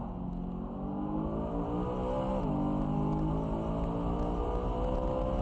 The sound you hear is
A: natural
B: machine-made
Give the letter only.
A